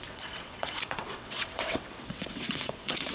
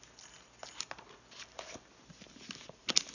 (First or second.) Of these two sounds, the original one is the second